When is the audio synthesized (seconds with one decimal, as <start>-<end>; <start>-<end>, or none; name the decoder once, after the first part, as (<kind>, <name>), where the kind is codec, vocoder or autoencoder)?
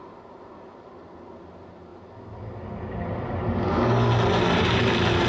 none